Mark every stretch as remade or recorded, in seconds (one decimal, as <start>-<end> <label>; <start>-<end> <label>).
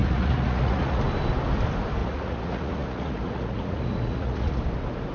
0.0-1.0 remade; 1.0-2.0 recorded; 2.0-4.6 remade; 4.6-5.1 recorded